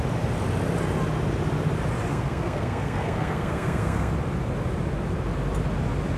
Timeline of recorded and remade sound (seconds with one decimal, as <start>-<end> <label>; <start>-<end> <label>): 0.0-2.1 recorded; 2.1-4.1 remade; 4.1-6.2 recorded